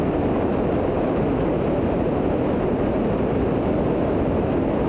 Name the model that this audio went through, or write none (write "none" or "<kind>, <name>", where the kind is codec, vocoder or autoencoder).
none